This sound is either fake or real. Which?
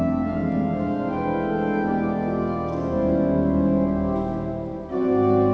real